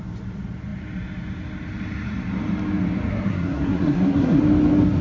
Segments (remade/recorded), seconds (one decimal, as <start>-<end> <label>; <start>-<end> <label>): 0.0-3.1 recorded; 3.1-4.4 remade; 4.4-5.0 recorded